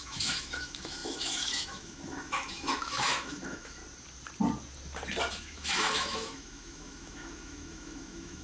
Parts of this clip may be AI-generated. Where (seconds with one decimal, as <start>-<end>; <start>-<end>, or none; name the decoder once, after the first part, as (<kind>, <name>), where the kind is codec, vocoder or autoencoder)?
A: 0.0-3.8 (autoencoder, DAC-VAE); 5.3-8.4